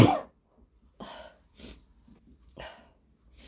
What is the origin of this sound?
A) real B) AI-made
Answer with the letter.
A